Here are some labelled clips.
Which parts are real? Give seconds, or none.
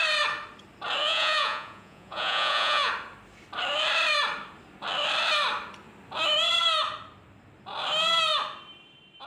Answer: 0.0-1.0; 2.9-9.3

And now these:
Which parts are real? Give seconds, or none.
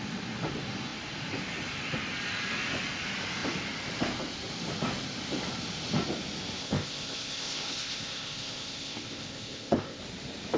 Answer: 0.0-6.6; 10.0-10.6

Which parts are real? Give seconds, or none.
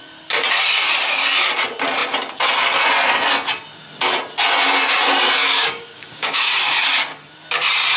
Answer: 0.0-5.4; 6.4-8.0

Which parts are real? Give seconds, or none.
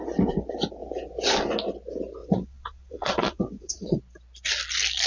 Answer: 0.0-2.2; 4.0-5.1